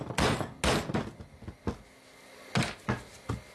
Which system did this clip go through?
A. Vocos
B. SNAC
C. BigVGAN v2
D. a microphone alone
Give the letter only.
D